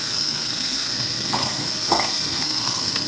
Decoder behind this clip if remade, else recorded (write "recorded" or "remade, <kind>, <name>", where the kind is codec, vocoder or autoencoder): remade, codec, SNAC